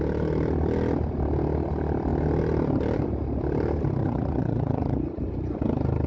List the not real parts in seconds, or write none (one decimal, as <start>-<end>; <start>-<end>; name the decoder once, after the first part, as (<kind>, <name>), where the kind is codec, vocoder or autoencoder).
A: 4.0-5.0 (vocoder, Vocos)